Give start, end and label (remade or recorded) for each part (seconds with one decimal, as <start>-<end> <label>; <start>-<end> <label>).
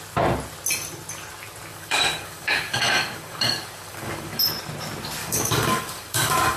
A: 0.0-1.7 recorded; 1.7-4.4 remade; 4.4-5.2 recorded; 5.2-6.6 remade